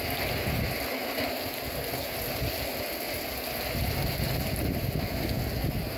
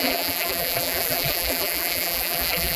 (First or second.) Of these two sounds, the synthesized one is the second